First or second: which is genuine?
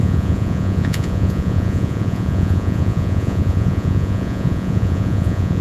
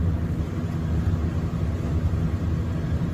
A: second